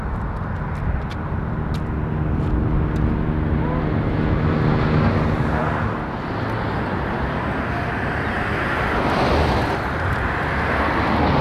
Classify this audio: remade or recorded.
recorded